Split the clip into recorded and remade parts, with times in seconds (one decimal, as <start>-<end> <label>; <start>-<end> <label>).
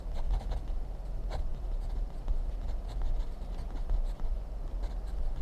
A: 0.0-1.5 recorded; 1.5-4.7 remade; 4.7-5.4 recorded